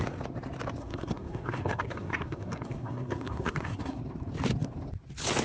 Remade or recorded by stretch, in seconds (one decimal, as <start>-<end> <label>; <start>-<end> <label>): 0.0-0.8 recorded; 0.8-4.0 remade; 4.0-5.4 recorded